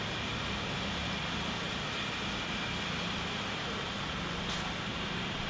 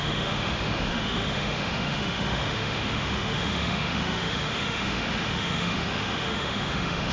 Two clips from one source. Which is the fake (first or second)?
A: second